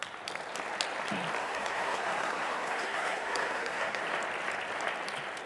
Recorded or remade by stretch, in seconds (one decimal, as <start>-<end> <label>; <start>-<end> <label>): 0.0-1.4 recorded; 1.4-4.0 remade; 4.0-5.5 recorded

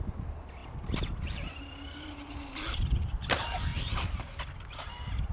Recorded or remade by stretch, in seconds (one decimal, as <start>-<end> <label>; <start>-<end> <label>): 0.0-5.3 recorded

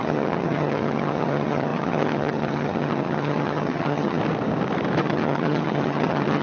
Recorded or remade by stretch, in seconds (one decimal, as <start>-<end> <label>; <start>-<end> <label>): 0.0-4.2 remade; 4.2-5.0 recorded; 5.0-6.4 remade